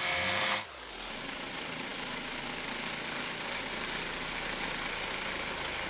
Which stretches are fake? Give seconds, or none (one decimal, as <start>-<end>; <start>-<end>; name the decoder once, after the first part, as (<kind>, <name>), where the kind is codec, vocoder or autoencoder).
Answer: none